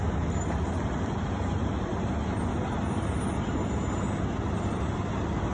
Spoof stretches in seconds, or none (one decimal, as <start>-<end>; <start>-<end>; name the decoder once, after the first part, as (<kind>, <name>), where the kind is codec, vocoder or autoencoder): none